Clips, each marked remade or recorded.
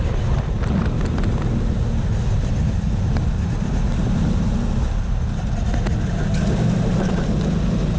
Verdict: recorded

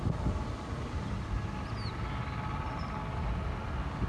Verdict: recorded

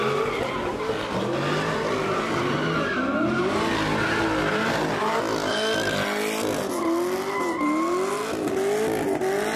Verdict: recorded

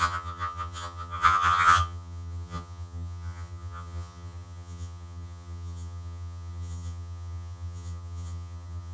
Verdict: remade